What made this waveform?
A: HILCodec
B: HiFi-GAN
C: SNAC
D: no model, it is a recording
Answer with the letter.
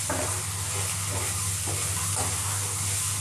D